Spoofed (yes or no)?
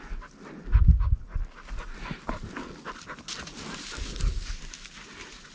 no